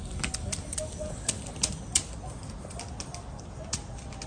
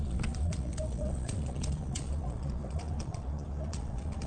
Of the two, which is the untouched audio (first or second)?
first